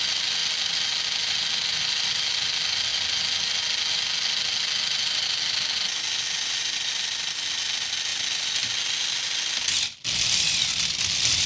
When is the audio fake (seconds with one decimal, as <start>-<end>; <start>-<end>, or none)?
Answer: none